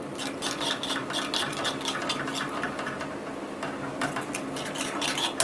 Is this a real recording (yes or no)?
yes